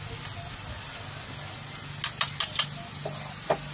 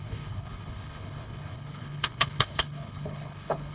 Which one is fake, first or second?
second